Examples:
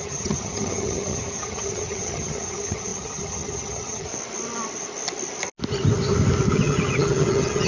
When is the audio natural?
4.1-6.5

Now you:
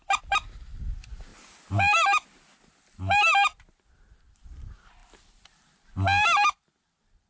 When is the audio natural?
0.0-7.3

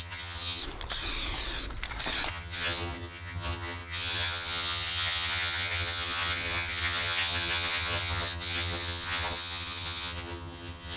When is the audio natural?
0.6-2.3

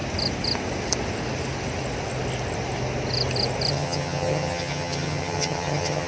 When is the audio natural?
0.0-3.7

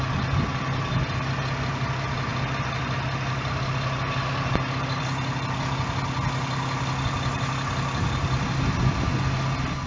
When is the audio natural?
0.0-9.9

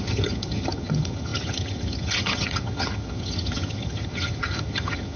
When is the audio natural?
none